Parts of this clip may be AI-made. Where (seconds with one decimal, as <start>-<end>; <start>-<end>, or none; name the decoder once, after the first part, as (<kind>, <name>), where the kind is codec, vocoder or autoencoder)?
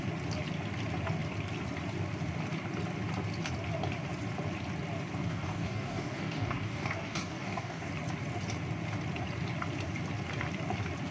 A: 5.2-7.9 (codec, DAC)